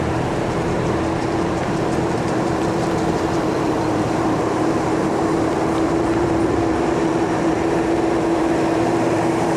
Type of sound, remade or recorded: remade